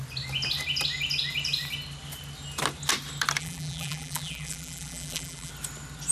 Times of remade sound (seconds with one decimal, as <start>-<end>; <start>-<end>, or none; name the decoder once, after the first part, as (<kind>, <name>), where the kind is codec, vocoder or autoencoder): 3.4-5.5 (vocoder, BigVGAN v2)